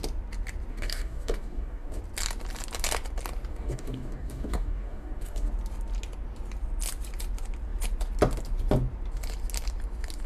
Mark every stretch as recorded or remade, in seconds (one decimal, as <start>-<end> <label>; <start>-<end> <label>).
0.0-0.7 recorded; 0.7-2.0 remade; 2.0-3.5 recorded; 3.5-5.5 remade; 5.5-10.3 recorded

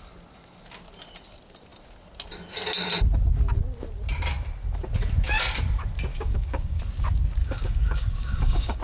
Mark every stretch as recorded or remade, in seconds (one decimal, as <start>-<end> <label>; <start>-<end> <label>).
0.0-6.1 recorded; 6.1-6.8 remade; 6.8-7.4 recorded; 7.4-8.8 remade

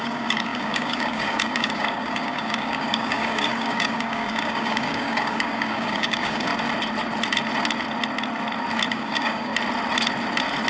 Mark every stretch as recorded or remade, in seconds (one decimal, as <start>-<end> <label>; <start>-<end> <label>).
0.0-6.5 remade; 6.5-8.9 recorded; 8.9-9.5 remade; 9.5-10.7 recorded